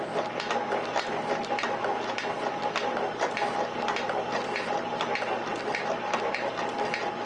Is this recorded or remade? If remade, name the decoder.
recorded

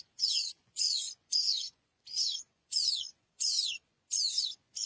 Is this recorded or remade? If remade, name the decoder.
remade, vocoder, Vocos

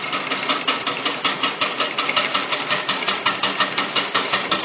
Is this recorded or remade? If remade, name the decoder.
recorded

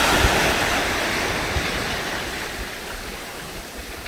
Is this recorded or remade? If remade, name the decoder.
recorded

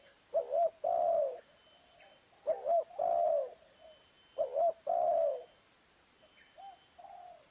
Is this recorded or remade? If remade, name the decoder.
recorded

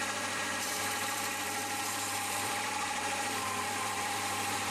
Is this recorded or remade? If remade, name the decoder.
remade, vocoder, BigVGAN v2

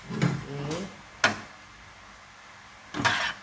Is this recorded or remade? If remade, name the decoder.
recorded